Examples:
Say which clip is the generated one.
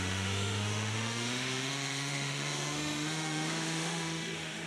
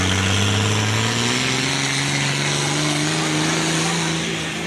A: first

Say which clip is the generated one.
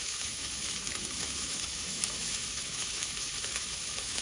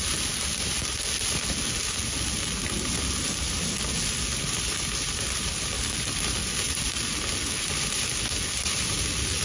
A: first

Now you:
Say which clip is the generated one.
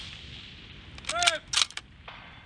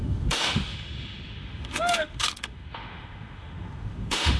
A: second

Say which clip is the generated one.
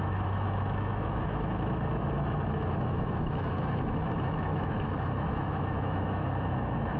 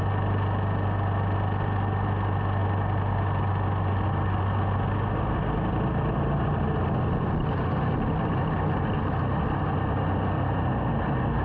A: first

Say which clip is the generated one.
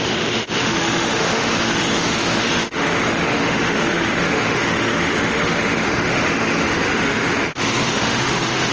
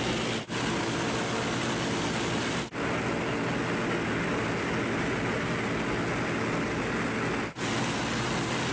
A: first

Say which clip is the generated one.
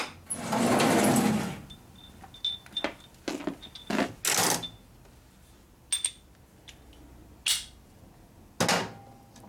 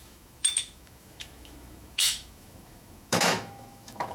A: second